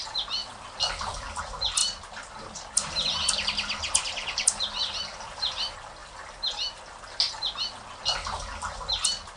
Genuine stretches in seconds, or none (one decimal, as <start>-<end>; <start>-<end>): 0.0-0.4; 1.4-9.4